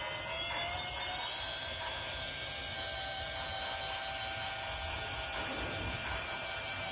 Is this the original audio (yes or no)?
yes